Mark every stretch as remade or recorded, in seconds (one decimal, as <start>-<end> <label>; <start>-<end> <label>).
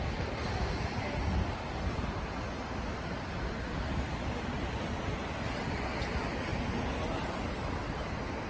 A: 0.0-8.5 recorded